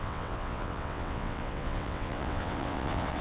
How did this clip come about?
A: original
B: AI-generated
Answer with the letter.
B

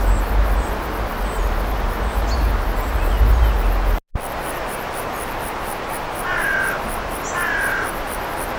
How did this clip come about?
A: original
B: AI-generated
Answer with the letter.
A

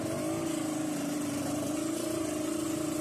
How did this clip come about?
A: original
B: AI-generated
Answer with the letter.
A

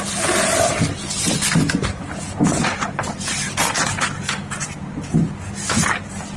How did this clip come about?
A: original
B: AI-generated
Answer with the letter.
A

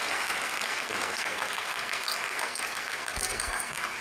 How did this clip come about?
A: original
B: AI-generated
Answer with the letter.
B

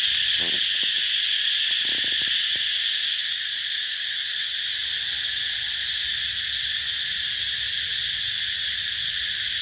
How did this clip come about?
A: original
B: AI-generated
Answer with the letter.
A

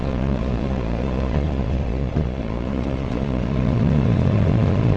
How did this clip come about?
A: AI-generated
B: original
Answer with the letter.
A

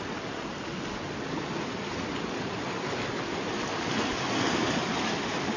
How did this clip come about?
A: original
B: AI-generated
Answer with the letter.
A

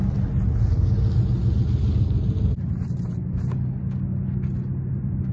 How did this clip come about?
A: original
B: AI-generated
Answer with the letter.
A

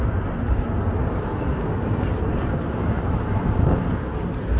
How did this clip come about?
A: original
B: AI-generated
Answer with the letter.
A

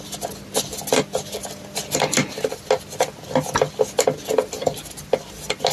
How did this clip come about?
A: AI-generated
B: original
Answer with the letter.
B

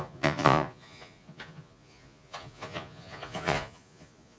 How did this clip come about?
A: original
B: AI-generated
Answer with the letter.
B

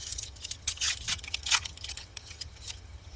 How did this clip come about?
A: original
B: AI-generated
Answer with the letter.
B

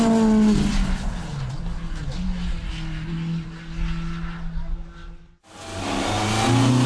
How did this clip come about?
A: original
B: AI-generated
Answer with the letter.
A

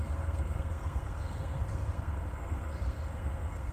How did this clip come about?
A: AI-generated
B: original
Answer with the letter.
A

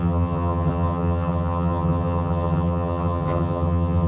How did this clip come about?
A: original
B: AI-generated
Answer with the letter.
B